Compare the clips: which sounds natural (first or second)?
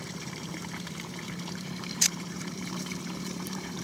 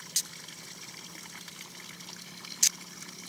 second